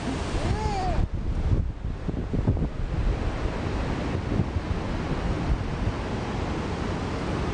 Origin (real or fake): real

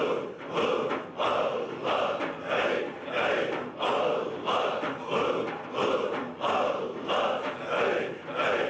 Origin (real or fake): real